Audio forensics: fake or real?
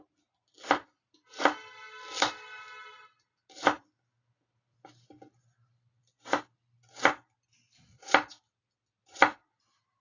real